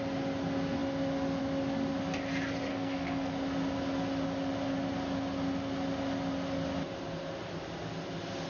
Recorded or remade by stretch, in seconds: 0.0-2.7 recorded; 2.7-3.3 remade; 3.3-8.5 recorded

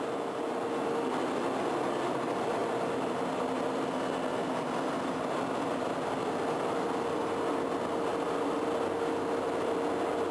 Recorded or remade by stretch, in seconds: 0.0-10.3 recorded